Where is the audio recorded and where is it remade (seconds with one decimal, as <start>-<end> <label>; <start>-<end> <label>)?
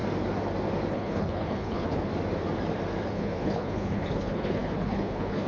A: 0.0-0.9 recorded; 0.9-2.1 remade; 2.1-3.1 recorded; 3.1-5.5 remade